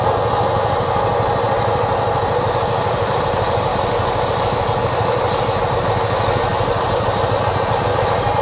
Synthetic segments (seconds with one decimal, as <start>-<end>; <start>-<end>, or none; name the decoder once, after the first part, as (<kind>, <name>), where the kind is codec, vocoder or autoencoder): none